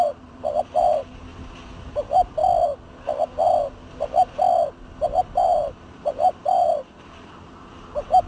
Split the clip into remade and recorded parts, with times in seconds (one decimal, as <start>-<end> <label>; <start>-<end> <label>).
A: 0.0-1.3 remade; 1.3-1.9 recorded; 1.9-2.4 remade; 2.4-4.8 recorded; 4.8-8.3 remade